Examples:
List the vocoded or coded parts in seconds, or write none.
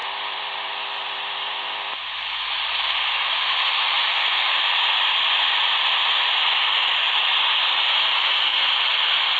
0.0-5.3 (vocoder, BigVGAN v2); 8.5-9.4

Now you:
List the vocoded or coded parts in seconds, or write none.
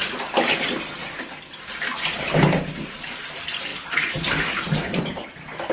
3.7-5.0 (vocoder, BigVGAN v2)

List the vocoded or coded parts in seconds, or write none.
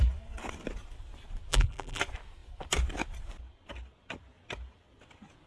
1.5-2.0 (vocoder, BigVGAN v2)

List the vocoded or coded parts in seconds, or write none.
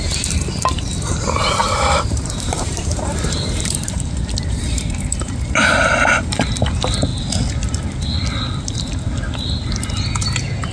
1.6-6.5 (vocoder, BigVGAN v2)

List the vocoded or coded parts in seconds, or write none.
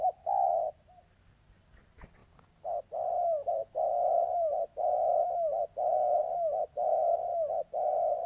none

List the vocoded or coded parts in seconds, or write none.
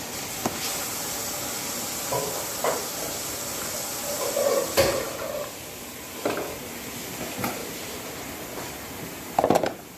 7.6-8.3 (vocoder, BigVGAN v2)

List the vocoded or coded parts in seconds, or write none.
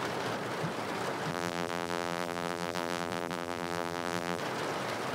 1.3-4.4 (vocoder, BigVGAN v2)